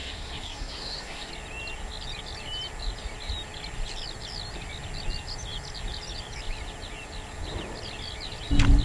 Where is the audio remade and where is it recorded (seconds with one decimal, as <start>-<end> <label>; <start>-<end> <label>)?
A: 0.0-1.3 remade; 1.3-8.8 recorded